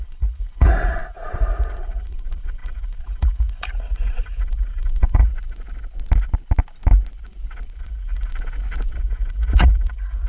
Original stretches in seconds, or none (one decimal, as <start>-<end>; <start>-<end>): 5.3-7.8; 8.3-9.0